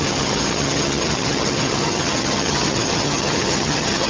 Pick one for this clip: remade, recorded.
remade